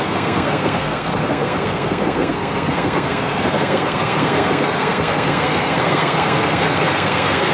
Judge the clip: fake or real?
fake